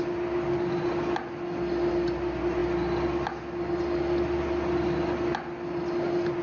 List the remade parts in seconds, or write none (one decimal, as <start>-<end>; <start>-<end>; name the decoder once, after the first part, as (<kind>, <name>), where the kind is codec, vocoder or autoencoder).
none